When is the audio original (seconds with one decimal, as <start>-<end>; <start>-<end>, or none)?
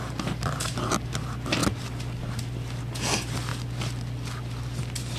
0.0-5.2